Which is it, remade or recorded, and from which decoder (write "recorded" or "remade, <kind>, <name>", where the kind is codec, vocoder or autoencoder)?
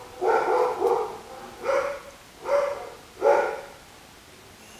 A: recorded